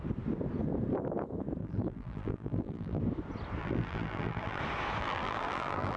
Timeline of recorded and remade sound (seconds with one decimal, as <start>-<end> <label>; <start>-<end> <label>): 0.0-1.6 recorded; 1.6-3.0 remade; 3.0-3.6 recorded; 3.6-4.6 remade; 4.6-5.0 recorded; 5.0-6.0 remade